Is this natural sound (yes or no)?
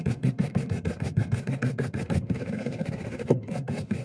no